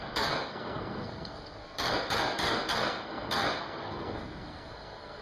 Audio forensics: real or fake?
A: fake